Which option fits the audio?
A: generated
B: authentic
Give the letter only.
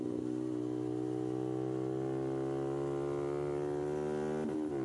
B